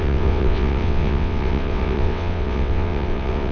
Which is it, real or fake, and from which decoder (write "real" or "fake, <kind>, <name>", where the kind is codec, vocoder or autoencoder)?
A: fake, vocoder, WaveNeXt